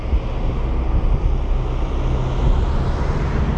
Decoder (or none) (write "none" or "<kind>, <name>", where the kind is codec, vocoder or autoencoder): none